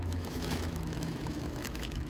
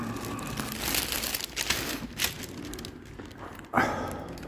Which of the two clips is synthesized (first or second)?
first